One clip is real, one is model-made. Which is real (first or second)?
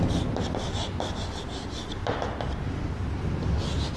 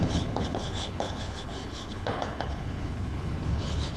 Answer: first